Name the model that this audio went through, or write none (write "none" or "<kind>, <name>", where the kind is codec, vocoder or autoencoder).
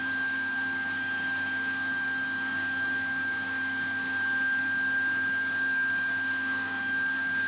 codec, DAC